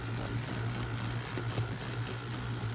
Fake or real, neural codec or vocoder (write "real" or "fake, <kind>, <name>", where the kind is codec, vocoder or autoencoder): real